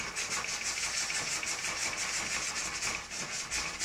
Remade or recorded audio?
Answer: recorded